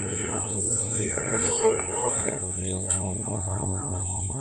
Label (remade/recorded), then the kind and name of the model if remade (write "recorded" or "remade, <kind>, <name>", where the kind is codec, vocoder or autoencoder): remade, codec, SNAC